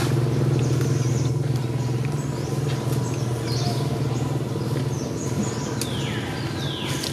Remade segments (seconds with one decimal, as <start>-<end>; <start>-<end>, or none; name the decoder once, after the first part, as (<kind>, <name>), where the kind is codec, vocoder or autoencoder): none